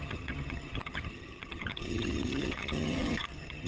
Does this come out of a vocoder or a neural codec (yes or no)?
yes